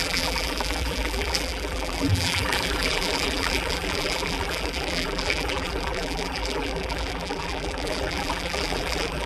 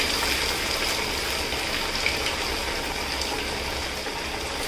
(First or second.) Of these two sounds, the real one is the second